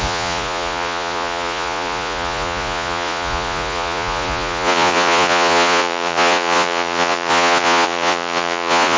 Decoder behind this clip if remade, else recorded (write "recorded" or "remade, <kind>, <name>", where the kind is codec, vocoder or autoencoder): remade, vocoder, Vocos